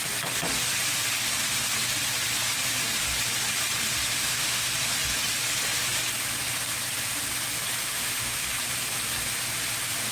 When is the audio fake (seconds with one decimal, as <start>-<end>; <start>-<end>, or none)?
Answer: 4.1-4.7; 7.8-8.5